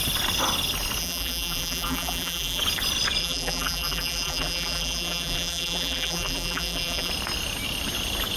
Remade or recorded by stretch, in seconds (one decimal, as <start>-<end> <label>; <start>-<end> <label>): 0.0-1.0 recorded; 1.0-2.6 remade; 2.6-3.2 recorded; 3.2-7.1 remade; 7.1-8.4 recorded

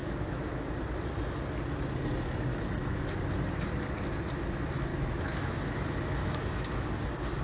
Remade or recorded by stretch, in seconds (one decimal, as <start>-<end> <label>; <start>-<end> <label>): 0.0-0.7 remade; 0.7-2.5 recorded; 2.5-3.0 remade; 3.0-4.9 recorded; 4.9-5.6 remade; 5.6-6.2 recorded; 6.2-6.9 remade; 6.9-7.4 recorded

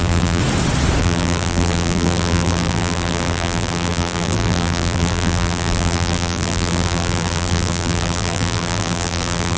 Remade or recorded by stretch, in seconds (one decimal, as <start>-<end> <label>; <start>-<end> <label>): 0.0-0.4 remade; 0.4-1.0 recorded; 1.0-9.6 remade

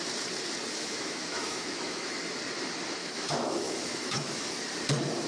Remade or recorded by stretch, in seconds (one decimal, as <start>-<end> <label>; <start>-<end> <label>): 0.0-0.7 recorded; 0.7-2.2 remade; 2.2-3.0 recorded; 3.0-4.5 remade; 4.5-5.3 recorded

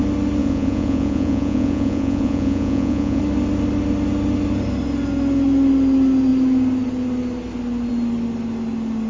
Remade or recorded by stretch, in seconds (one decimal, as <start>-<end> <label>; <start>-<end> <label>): 0.0-0.4 recorded; 0.4-3.2 remade; 3.2-9.1 recorded

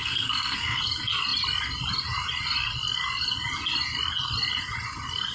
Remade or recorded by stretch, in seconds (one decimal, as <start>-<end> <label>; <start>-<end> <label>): 0.0-0.8 remade; 0.8-5.3 recorded

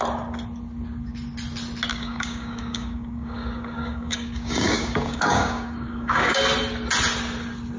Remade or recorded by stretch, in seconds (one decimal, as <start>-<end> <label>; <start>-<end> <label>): 0.0-1.9 recorded; 1.9-6.4 remade; 6.4-7.8 recorded